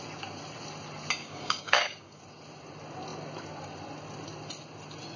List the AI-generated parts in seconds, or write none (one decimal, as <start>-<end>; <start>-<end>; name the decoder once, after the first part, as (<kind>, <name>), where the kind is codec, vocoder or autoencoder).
1.2-2.2 (codec, DAC)

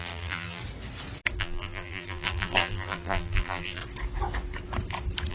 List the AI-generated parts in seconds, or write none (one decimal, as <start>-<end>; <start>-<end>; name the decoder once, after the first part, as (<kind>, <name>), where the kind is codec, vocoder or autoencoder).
0.0-0.6 (vocoder, BigVGAN v2); 1.4-3.8

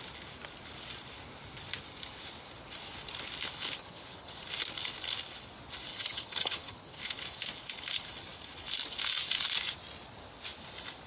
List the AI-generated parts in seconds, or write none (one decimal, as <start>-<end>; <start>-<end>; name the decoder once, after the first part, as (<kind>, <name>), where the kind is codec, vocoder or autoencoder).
3.8-4.4 (vocoder, HiFi-GAN); 5.9-7.0

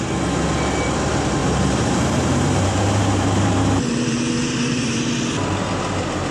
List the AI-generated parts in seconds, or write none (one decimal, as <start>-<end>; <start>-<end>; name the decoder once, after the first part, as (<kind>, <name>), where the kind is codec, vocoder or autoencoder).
1.4-5.0 (vocoder, BigVGAN v2)

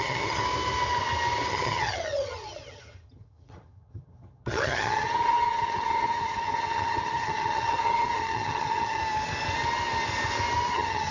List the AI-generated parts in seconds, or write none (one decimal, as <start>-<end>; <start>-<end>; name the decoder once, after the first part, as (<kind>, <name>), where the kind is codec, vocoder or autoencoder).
0.0-0.4 (vocoder, HiFi-GAN); 1.5-9.0; 10.7-11.1